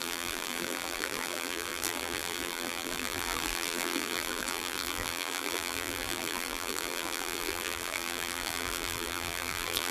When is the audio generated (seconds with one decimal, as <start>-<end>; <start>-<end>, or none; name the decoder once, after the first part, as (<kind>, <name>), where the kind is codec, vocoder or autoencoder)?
0.0-9.9 (vocoder, BigVGAN v2)